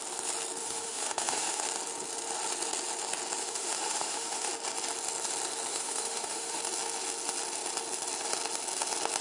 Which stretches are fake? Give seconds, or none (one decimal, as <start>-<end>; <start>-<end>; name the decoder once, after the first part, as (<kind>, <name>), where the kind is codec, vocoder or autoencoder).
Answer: 0.6-1.6 (autoencoder, DAC-VAE); 3.4-4.5; 5.7-6.6